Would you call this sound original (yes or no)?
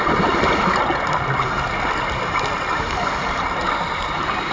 yes